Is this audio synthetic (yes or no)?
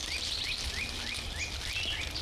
no